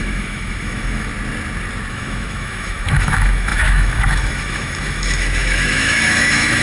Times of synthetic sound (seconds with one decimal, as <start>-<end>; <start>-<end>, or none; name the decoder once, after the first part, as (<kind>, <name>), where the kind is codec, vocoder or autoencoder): 0.0-1.1 (autoencoder, DAC-VAE); 1.9-6.6